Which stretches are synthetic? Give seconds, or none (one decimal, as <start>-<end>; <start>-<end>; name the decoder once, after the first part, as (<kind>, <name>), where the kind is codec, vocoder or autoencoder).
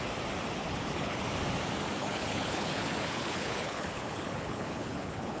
0.6-1.2 (codec, HILCodec); 2.0-5.4